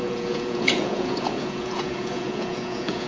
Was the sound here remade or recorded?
remade